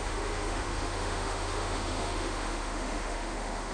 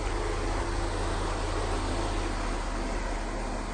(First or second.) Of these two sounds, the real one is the second